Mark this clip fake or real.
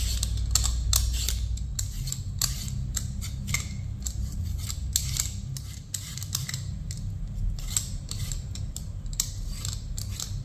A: real